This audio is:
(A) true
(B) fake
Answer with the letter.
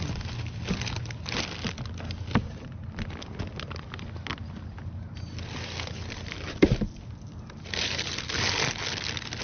A